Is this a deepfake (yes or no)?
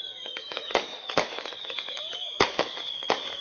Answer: yes